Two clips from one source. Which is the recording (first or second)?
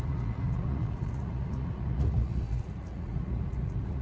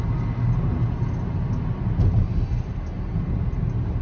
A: second